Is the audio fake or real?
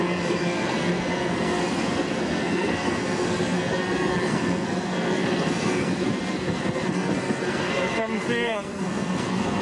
fake